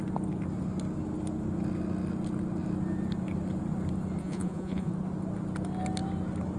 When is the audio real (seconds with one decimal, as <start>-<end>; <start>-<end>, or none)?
0.0-4.2; 4.9-6.6

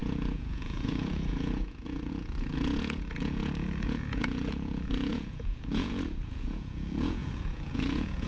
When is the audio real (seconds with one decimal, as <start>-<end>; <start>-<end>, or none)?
none

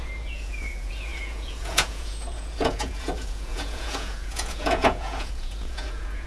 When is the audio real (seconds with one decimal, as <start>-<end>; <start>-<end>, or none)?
none

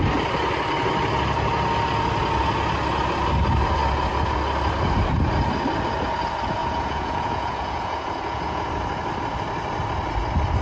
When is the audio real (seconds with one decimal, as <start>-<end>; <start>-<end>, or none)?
0.0-6.6; 8.7-10.6

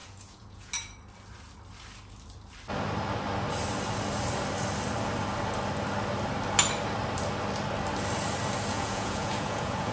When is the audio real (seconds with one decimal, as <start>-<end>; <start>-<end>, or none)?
0.7-8.7